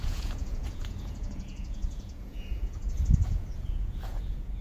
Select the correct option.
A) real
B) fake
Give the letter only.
B